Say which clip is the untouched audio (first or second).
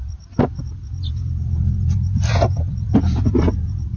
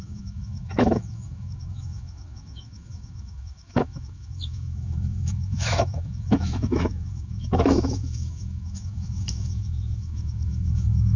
first